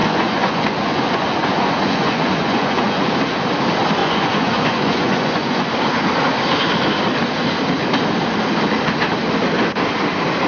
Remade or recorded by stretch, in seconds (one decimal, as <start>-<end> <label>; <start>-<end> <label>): 0.0-3.1 remade; 3.1-4.0 recorded; 4.0-5.7 remade; 5.7-10.5 recorded